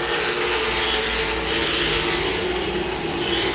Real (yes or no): yes